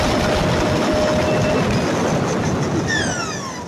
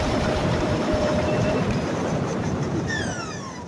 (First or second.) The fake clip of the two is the second